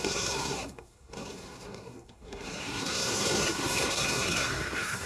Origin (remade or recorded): remade